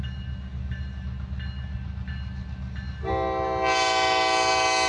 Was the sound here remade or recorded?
recorded